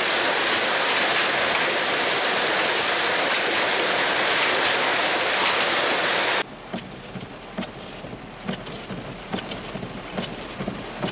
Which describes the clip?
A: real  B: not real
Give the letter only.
A